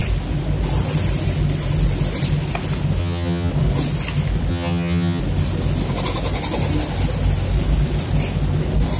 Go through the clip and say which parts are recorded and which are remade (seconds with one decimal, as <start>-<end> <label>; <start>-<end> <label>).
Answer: 0.0-3.0 recorded; 3.0-3.5 remade; 3.5-4.5 recorded; 4.5-5.2 remade; 5.2-9.0 recorded